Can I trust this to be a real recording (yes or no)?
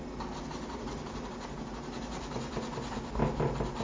yes